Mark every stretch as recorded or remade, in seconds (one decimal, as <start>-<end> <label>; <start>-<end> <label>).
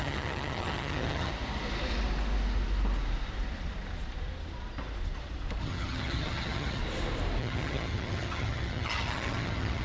0.0-1.3 remade; 1.3-5.6 recorded; 5.6-6.8 remade; 6.8-7.4 recorded; 7.4-9.8 remade